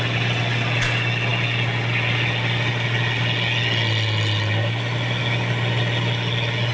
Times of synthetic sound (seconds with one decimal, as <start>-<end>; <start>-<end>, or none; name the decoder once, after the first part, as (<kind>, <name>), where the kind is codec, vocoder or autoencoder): none